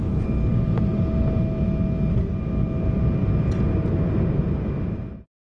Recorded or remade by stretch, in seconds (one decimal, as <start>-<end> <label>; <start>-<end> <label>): 0.0-5.5 recorded